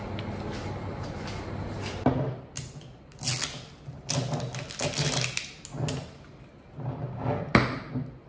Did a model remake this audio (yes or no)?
no